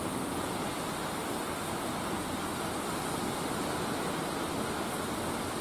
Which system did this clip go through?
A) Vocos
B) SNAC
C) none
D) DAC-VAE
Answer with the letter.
C